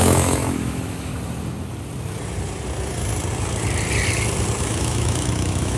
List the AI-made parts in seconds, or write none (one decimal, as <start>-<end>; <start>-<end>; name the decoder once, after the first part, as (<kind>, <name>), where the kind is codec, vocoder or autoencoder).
0.0-1.1 (autoencoder, DAC-VAE); 4.6-5.8